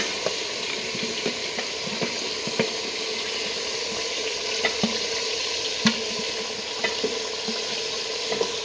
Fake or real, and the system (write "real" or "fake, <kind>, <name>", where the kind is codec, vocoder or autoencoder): real